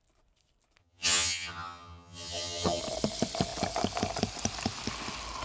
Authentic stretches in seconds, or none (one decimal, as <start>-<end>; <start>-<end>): 0.0-0.8; 2.8-5.4